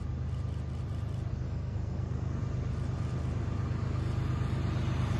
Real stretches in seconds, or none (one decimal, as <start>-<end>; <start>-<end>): 0.0-1.3; 2.4-5.2